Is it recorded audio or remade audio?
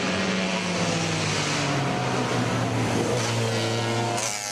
recorded